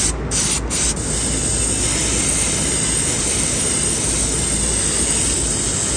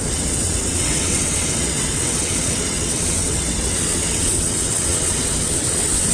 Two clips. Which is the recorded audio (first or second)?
first